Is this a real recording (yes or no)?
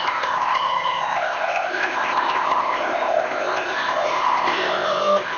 no